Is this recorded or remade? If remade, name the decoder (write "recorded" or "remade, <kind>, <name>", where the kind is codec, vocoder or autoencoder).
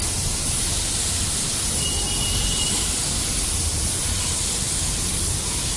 recorded